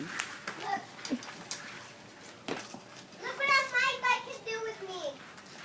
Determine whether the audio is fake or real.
real